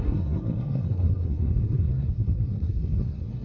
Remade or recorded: remade